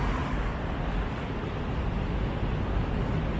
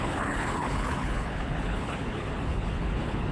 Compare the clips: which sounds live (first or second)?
first